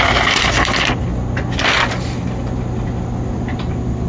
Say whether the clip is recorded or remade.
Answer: recorded